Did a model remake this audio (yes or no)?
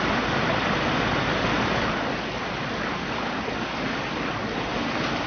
no